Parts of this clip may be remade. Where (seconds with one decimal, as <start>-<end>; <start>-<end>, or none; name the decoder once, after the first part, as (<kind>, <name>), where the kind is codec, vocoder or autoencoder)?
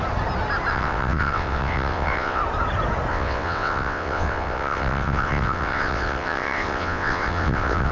0.7-2.4 (vocoder, WaveNeXt); 3.1-7.9